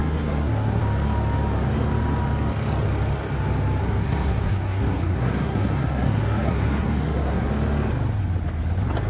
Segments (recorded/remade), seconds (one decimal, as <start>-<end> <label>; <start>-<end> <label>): 0.0-0.8 remade; 0.8-3.8 recorded; 3.8-7.5 remade; 7.5-9.1 recorded